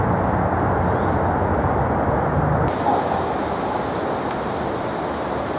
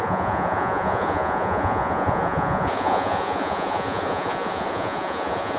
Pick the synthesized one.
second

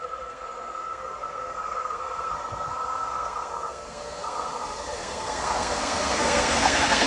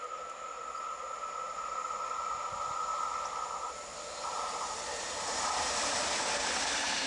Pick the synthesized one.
first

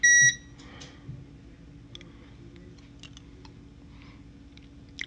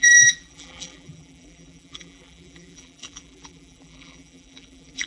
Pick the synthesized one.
second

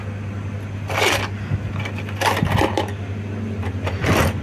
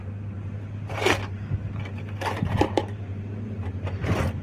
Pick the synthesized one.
second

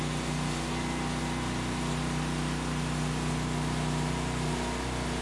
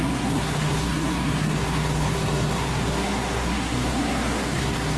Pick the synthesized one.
second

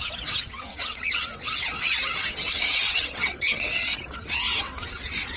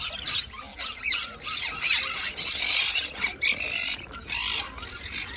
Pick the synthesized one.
first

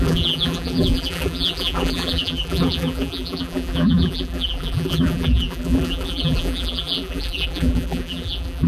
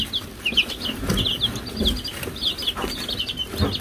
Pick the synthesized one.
first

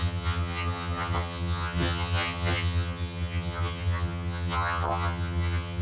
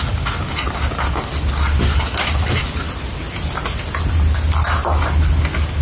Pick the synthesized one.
first